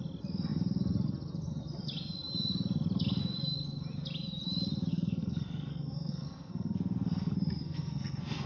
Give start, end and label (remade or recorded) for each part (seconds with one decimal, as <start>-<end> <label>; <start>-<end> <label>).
0.0-4.9 recorded; 4.9-8.5 remade